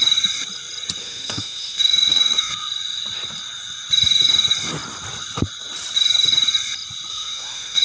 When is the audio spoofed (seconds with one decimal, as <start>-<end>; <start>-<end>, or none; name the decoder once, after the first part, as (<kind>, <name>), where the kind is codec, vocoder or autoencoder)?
1.0-2.5 (autoencoder, DAC-VAE); 7.1-7.8